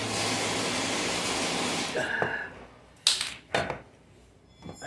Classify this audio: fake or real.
real